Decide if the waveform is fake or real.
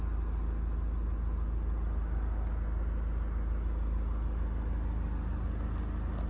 real